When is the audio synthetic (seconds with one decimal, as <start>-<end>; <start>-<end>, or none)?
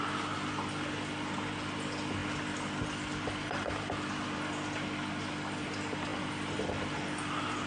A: none